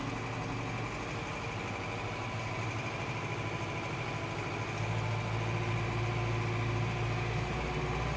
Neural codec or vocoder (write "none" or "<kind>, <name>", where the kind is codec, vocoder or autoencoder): none